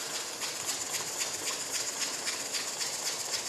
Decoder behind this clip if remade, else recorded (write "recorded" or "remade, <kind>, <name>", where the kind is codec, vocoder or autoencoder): recorded